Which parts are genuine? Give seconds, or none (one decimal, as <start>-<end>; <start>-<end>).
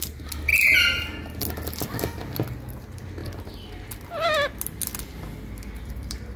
0.0-6.4